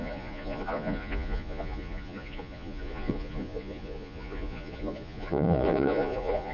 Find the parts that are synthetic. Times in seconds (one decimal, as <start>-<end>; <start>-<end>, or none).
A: 0.0-6.5